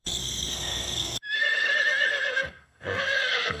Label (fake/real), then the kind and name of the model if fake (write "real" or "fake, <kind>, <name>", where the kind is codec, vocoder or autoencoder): fake, codec, SNAC